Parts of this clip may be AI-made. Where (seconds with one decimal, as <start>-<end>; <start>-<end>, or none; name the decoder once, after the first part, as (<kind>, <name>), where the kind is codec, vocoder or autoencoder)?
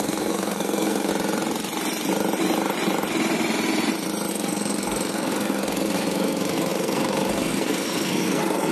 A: 0.0-1.1 (codec, SNAC); 4.3-8.7